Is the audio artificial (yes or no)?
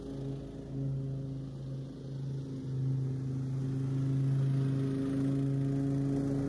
no